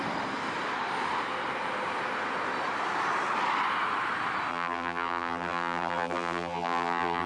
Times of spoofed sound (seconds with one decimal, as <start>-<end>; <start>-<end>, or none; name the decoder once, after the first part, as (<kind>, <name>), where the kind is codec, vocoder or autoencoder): 4.5-7.3 (vocoder, BigVGAN v2)